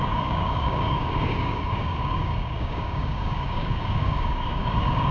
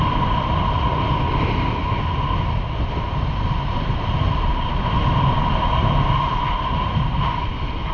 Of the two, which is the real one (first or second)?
second